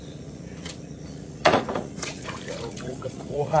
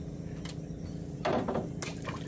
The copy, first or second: first